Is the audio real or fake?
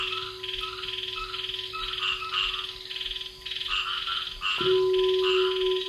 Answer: real